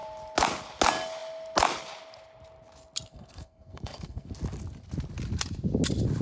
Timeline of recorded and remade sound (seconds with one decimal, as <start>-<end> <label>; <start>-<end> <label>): 0.0-3.1 recorded; 3.1-4.3 remade; 4.3-6.2 recorded